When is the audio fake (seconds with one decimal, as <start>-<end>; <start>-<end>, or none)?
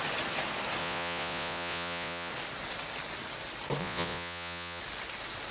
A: 0.8-2.3; 3.8-4.8